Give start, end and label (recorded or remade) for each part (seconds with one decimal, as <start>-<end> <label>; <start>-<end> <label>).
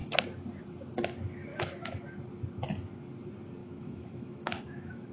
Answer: 0.0-1.5 recorded; 1.5-2.0 remade; 2.0-3.6 recorded; 3.6-5.1 remade